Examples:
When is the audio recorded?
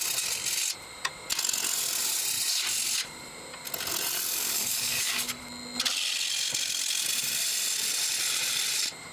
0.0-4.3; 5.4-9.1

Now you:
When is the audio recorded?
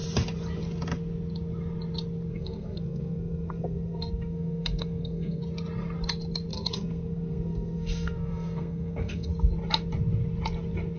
0.0-2.3; 5.4-6.5; 9.3-11.0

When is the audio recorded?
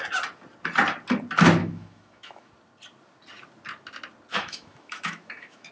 0.0-1.6; 2.5-4.3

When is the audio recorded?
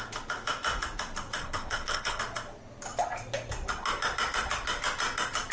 0.0-1.4; 2.2-5.5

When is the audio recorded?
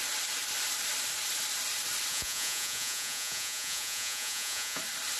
0.0-2.1; 4.8-5.2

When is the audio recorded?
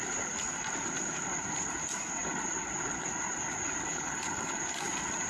0.0-3.9; 4.6-5.3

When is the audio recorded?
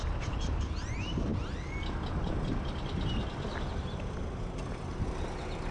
0.0-5.7